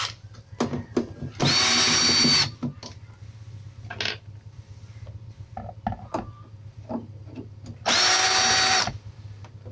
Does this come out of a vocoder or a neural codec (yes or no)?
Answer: no